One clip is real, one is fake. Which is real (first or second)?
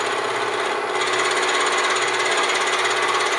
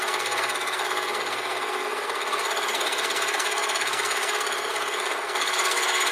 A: first